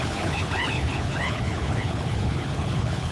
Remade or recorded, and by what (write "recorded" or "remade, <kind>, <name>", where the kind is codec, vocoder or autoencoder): remade, codec, HILCodec